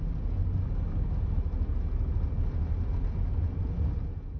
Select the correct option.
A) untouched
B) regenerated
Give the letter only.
A